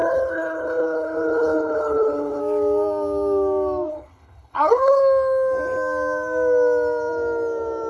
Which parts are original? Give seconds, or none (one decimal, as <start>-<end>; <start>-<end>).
2.4-3.9; 5.0-7.9